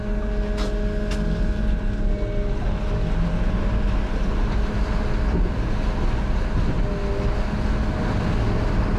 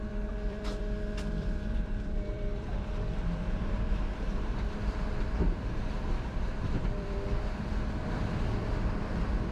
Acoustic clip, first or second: first